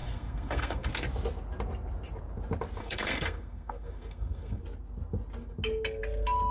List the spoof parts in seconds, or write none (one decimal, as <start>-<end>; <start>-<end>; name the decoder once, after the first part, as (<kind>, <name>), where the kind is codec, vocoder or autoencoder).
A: 0.0-0.9 (codec, SNAC); 2.8-4.6